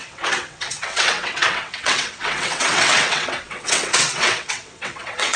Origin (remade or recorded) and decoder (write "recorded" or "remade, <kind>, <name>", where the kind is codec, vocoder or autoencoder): remade, vocoder, WaveNeXt